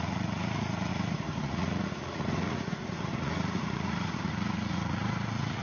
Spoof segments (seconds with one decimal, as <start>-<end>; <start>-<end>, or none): 0.0-5.6